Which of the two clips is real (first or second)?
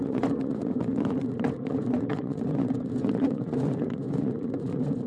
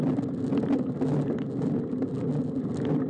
second